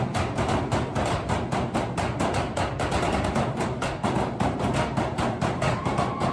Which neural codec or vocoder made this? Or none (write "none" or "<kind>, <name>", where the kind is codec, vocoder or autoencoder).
none